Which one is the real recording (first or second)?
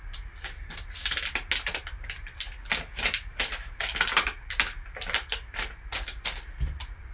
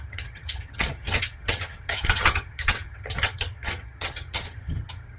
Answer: first